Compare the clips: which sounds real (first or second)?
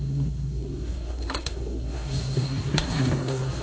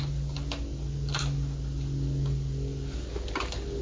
second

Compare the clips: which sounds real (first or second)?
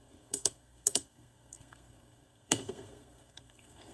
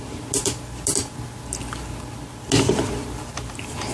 second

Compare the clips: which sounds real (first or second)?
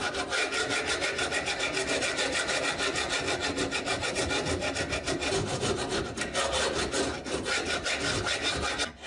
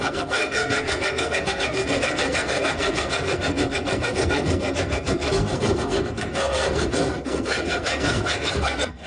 first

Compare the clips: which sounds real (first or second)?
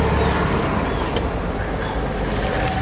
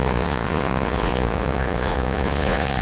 first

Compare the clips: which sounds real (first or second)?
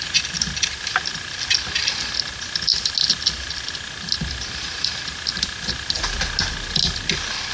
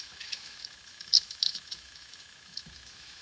first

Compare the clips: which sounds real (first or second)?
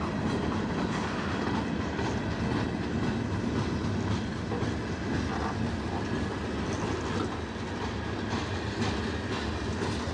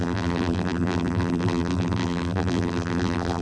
first